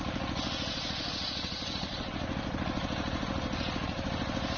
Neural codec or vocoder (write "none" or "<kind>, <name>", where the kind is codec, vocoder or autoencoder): none